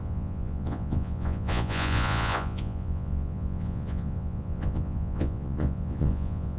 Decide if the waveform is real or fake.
fake